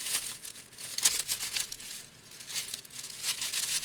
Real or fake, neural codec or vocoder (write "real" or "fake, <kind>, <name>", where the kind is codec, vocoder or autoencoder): fake, vocoder, Vocos